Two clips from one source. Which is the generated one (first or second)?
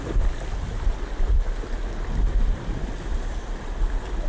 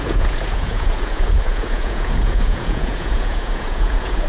second